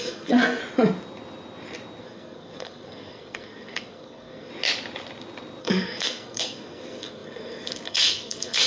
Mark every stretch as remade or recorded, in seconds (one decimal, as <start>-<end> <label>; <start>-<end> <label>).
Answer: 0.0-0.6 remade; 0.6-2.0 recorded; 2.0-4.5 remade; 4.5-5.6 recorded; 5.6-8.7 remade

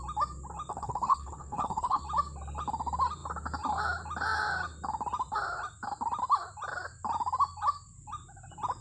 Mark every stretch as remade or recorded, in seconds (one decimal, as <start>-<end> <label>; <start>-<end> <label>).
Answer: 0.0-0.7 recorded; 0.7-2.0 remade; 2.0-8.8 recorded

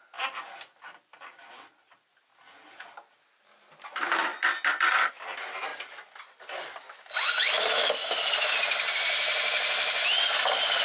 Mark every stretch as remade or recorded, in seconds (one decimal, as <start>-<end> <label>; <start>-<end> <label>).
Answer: 0.0-10.8 recorded

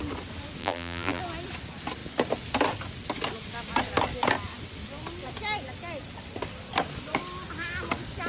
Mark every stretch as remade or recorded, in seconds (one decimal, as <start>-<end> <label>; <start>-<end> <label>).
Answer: 0.0-0.6 recorded; 0.6-1.2 remade; 1.2-8.3 recorded

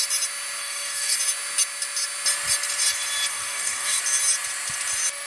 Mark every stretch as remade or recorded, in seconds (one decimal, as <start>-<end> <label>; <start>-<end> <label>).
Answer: 0.0-0.6 recorded; 0.6-1.2 remade; 1.2-3.3 recorded; 3.3-4.0 remade; 4.0-5.3 recorded

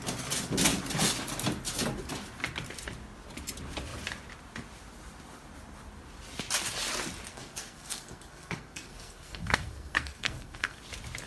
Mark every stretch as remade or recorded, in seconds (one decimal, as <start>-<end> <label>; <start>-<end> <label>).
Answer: 0.0-7.3 recorded; 7.3-10.9 remade; 10.9-11.3 recorded